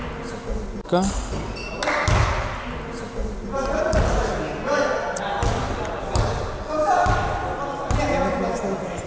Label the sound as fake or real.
real